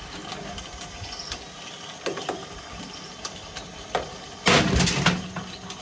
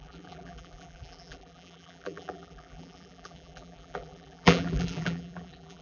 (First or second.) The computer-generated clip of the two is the second